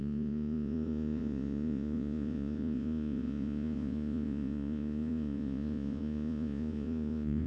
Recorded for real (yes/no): no